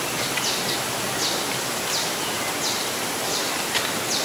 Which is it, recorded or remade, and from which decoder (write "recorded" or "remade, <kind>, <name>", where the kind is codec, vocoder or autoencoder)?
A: recorded